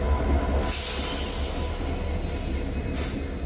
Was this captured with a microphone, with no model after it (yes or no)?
yes